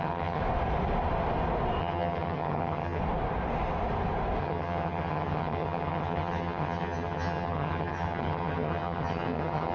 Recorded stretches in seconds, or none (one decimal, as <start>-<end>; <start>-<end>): 0.4-1.8; 3.0-4.4